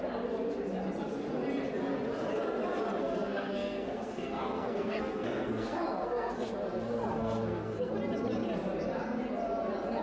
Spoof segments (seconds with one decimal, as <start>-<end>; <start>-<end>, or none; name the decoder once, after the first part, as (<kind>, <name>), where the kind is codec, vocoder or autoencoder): 3.0-6.5 (codec, SNAC); 7.1-7.9

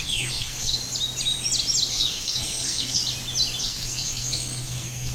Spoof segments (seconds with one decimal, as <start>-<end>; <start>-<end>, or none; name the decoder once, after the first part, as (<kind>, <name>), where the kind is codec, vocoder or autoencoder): 0.0-0.8 (codec, SNAC); 1.9-3.0; 3.6-5.1